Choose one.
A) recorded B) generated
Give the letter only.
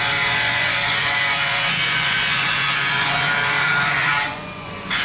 B